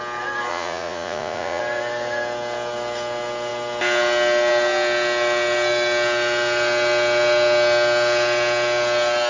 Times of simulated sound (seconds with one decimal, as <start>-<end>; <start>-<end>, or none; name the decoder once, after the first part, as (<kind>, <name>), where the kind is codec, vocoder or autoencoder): 0.5-1.6 (vocoder, Vocos)